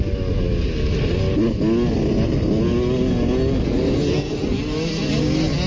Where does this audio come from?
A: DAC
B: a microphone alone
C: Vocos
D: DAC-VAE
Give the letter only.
B